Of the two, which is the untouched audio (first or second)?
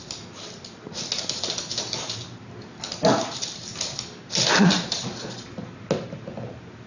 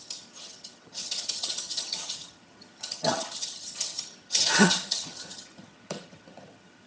first